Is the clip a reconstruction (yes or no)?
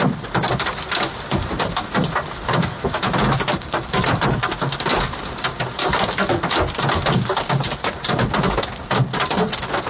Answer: no